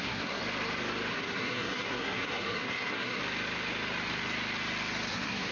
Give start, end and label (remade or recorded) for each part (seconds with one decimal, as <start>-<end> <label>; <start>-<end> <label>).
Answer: 0.0-0.4 remade; 0.4-1.1 recorded; 1.1-3.2 remade; 3.2-5.1 recorded; 5.1-5.5 remade